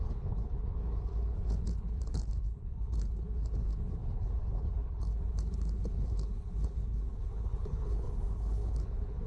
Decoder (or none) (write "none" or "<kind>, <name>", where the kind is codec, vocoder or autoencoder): codec, HILCodec